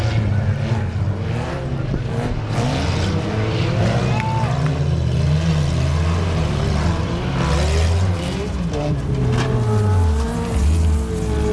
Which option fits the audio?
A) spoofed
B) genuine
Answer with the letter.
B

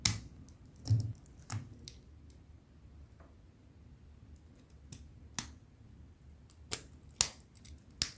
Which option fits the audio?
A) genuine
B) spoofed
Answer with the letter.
A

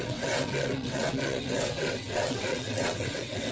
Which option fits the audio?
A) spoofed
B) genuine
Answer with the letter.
A